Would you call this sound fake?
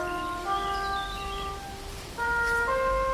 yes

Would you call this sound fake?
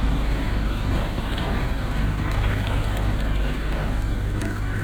yes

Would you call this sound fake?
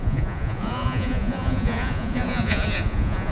yes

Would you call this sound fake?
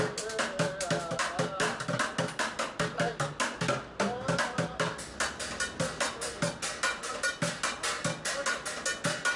no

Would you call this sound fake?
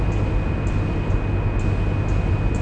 no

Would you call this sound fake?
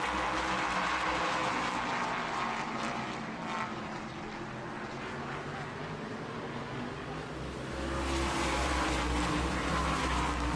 no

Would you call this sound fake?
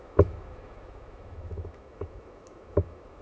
yes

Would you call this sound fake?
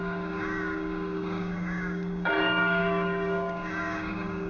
yes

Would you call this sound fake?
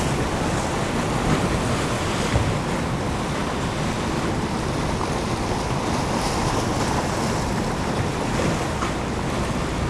no